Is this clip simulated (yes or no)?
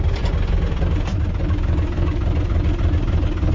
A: no